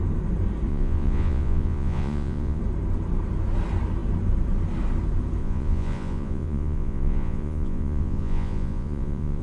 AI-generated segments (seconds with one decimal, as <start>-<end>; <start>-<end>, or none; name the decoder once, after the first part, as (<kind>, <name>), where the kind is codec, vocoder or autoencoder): 0.7-2.6 (vocoder, Vocos); 5.4-9.4